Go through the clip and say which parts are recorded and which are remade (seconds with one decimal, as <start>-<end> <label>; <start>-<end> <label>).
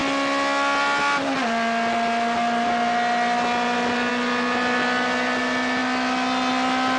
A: 0.0-7.0 recorded